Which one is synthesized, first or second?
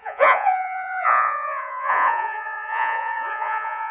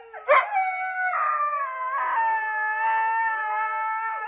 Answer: first